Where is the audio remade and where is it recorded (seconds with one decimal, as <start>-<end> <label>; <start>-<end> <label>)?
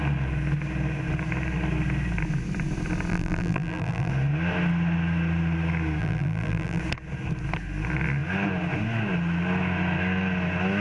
0.0-3.1 recorded; 3.1-4.1 remade; 4.1-6.0 recorded; 6.0-6.8 remade; 6.8-10.8 recorded